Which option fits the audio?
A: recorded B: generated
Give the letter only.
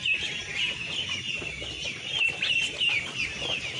A